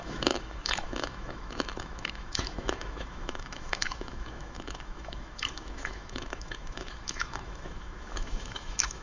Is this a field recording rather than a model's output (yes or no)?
no